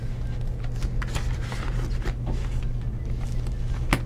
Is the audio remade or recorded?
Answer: recorded